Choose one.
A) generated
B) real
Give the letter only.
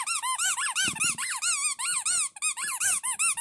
B